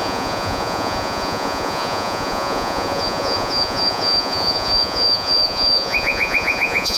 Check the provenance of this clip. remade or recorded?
remade